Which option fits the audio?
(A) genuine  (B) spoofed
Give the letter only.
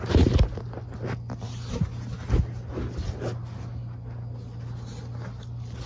A